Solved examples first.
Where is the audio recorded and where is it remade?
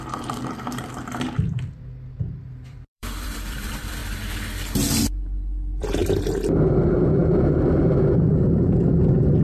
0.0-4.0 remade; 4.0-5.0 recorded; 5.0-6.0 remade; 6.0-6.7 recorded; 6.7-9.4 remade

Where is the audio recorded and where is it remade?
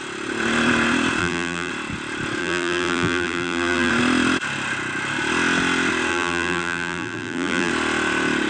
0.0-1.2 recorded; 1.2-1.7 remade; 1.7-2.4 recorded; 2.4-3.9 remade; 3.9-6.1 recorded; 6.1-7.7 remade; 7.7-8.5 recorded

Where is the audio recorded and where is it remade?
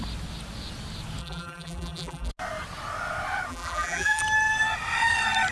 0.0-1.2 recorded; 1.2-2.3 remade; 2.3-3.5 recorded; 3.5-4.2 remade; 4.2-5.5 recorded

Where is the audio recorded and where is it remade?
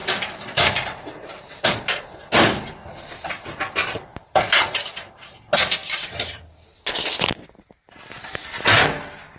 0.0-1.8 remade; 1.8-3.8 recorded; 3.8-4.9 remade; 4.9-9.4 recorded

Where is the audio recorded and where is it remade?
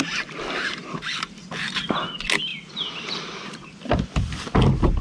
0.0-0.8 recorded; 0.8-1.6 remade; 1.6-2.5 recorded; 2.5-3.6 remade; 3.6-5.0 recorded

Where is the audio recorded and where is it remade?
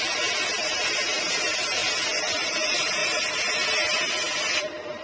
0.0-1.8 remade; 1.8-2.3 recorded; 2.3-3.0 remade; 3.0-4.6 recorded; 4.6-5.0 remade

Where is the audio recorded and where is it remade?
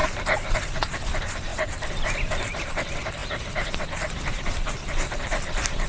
0.0-0.6 recorded; 0.6-3.2 remade; 3.2-3.7 recorded; 3.7-5.9 remade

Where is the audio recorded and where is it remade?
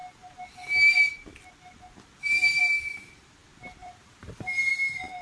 0.0-3.8 recorded; 3.8-4.7 remade; 4.7-5.2 recorded